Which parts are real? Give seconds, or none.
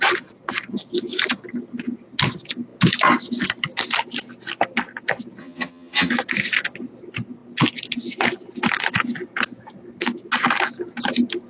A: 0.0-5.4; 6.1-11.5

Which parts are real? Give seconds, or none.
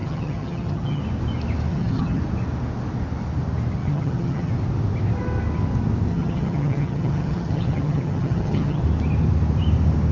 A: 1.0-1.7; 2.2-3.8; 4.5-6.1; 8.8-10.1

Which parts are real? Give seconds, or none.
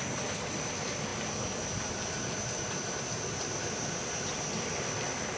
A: 0.0-5.4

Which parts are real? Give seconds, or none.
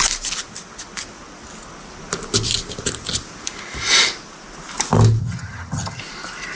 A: 0.0-5.2; 6.0-6.5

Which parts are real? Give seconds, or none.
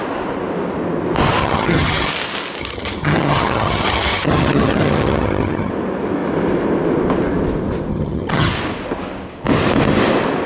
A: 0.0-1.4; 2.1-2.6; 5.7-7.9; 8.5-10.5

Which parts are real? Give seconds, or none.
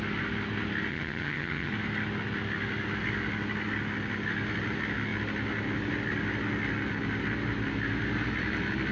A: 0.0-0.9; 1.7-8.9